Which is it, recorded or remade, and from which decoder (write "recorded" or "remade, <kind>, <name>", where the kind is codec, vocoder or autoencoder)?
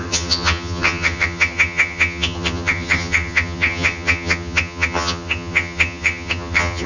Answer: remade, vocoder, HiFi-GAN